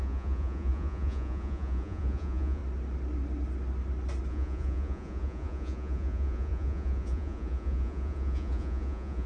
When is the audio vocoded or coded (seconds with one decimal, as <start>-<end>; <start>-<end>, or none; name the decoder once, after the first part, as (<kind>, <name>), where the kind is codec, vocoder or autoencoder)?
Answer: 0.0-2.6 (vocoder, Vocos); 4.3-9.3